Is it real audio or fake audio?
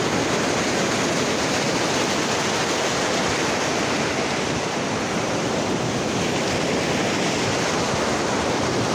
real